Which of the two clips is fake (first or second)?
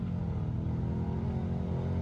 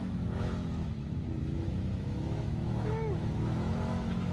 second